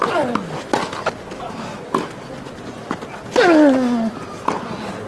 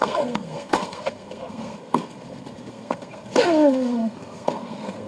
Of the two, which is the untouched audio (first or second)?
first